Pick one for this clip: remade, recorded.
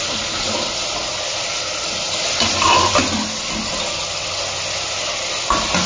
recorded